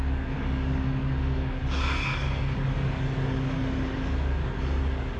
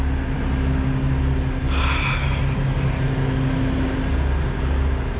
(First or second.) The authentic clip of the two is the second